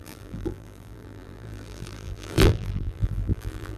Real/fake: fake